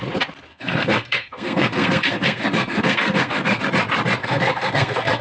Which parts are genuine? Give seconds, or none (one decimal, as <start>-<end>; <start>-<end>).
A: 0.0-0.5; 3.6-4.2